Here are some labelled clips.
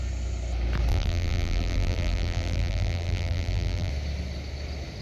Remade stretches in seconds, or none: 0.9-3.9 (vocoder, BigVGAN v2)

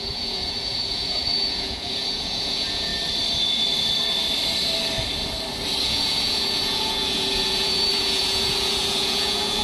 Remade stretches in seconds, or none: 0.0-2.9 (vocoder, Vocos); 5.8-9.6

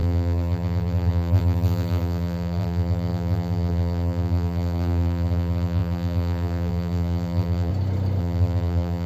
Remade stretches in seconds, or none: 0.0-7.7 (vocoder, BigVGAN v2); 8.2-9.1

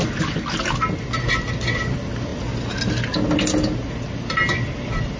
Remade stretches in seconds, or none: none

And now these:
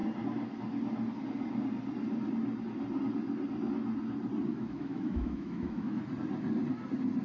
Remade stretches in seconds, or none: 4.5-6.0 (autoencoder, DAC-VAE)